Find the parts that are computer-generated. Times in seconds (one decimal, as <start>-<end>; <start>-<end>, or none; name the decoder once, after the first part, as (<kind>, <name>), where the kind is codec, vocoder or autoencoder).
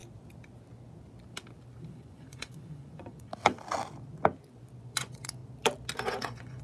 1.9-3.3 (vocoder, Vocos); 4.8-5.4; 6.0-6.6